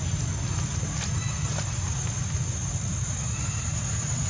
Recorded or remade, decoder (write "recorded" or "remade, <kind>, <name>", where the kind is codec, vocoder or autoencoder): recorded